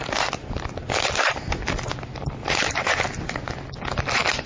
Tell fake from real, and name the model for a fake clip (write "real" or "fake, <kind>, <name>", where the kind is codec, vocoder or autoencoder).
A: real